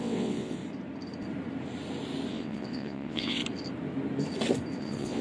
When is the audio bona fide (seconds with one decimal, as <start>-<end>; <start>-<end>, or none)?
0.6-2.3; 3.4-4.8